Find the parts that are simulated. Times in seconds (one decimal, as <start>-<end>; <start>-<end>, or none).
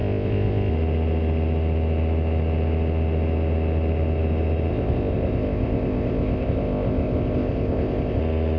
0.0-0.7; 4.7-8.2